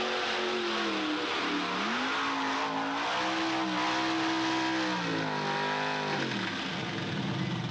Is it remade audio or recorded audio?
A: recorded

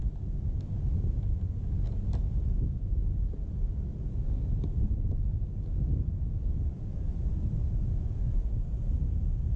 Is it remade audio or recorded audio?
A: recorded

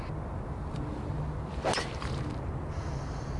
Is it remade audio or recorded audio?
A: recorded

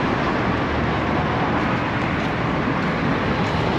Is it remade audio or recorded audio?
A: recorded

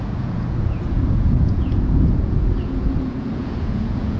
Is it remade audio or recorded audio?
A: remade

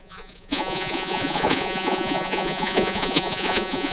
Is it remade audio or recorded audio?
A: remade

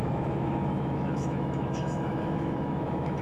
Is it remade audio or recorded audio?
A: remade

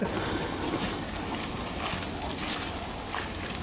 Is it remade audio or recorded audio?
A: recorded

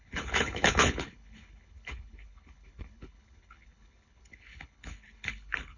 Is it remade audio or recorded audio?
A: remade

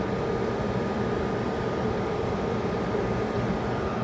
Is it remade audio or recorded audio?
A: recorded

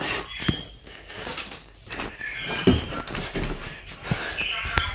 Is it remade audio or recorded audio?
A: recorded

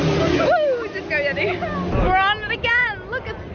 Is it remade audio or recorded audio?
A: recorded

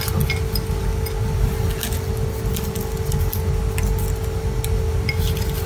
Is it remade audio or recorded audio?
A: recorded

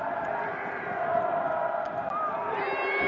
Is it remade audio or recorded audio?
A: recorded